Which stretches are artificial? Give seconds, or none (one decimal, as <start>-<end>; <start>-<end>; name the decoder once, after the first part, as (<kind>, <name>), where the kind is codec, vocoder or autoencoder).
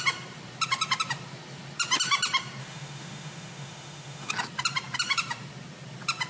2.6-4.3 (autoencoder, DAC-VAE)